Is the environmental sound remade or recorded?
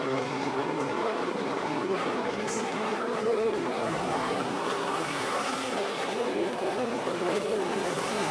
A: remade